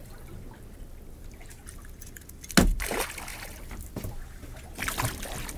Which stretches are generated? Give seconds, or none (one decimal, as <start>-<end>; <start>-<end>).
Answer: 3.3-4.2